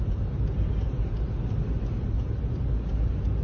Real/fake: real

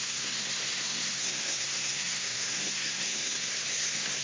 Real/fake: fake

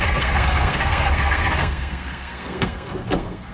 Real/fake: fake